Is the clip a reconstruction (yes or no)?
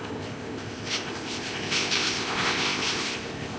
yes